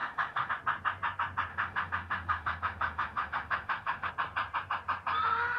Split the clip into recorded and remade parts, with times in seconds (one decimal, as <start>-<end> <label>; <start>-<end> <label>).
0.0-0.5 remade; 0.5-1.5 recorded; 1.5-4.1 remade; 4.1-5.6 recorded